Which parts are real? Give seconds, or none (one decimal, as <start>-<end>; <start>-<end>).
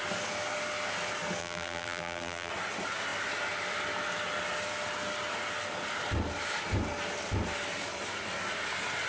0.0-1.4; 2.5-9.1